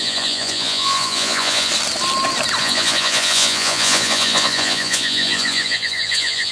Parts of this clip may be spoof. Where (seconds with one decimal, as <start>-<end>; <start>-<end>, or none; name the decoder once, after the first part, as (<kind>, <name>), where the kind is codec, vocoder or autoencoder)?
0.0-1.7 (vocoder, Vocos); 2.6-6.5